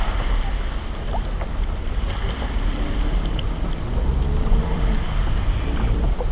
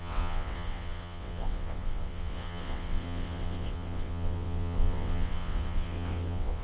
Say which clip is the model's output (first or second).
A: second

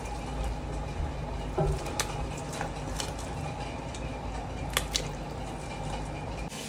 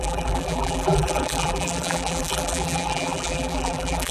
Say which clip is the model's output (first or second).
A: second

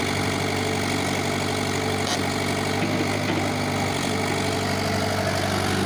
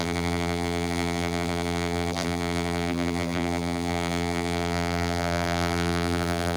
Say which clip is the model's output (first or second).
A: second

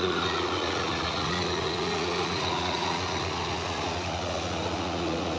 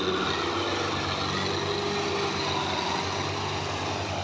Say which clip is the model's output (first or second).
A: first